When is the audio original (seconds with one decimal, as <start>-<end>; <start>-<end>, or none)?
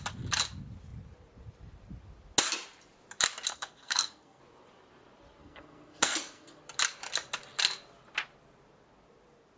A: 0.0-3.5; 4.4-5.4; 6.6-9.6